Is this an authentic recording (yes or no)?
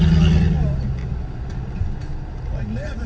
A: yes